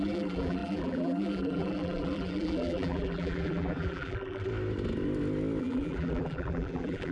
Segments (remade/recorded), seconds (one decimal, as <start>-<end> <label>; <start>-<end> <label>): 0.0-4.5 remade; 4.5-5.6 recorded; 5.6-7.1 remade